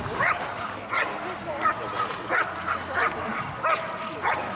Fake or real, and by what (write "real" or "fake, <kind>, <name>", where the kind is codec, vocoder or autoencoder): real